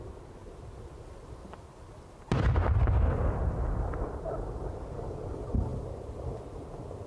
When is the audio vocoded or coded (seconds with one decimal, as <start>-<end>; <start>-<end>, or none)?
none